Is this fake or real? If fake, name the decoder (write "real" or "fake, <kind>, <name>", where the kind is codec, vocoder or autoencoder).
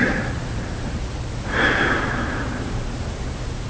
real